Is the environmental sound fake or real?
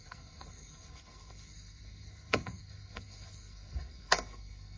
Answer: fake